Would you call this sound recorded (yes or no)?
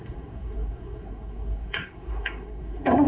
no